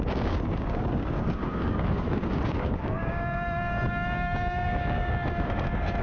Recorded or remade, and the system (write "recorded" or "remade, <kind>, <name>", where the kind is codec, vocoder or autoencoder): remade, codec, DAC